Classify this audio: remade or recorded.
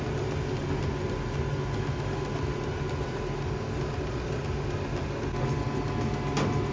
recorded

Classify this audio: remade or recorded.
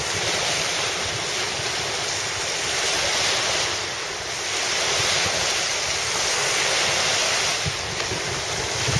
recorded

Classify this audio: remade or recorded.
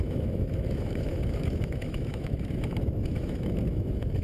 remade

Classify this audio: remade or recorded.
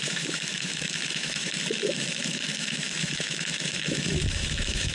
remade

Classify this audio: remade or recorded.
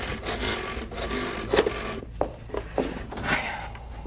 recorded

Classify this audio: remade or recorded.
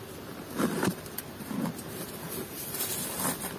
recorded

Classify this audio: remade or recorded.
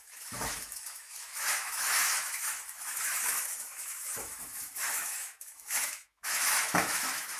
remade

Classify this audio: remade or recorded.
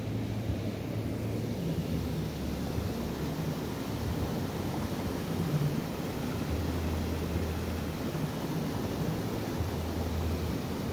recorded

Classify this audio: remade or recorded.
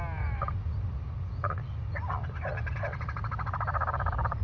recorded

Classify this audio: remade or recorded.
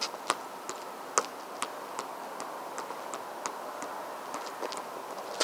recorded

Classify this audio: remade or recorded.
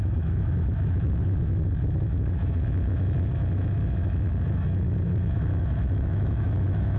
remade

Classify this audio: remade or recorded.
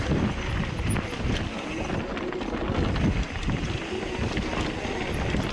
recorded